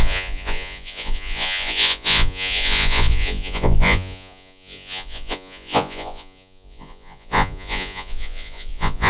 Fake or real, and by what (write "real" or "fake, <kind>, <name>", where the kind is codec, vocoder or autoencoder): fake, vocoder, Vocos